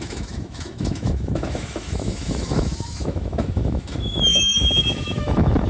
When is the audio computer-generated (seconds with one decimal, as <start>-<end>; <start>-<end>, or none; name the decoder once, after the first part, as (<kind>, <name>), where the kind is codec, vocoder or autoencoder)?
0.0-5.7 (autoencoder, DAC-VAE)